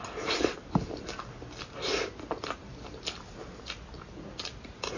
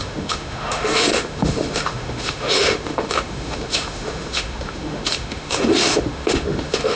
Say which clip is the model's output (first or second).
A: second